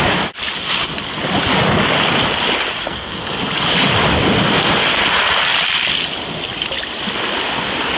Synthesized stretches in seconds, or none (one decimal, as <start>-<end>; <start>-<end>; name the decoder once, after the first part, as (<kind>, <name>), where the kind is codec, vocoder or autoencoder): 2.8-3.3 (codec, SNAC)